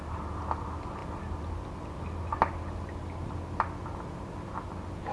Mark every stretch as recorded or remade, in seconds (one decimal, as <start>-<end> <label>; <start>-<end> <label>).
0.0-5.1 recorded